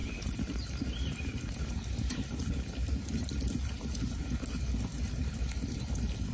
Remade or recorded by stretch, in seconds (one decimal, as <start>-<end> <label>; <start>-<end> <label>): 0.0-3.4 remade; 3.4-4.9 recorded; 4.9-5.6 remade; 5.6-6.3 recorded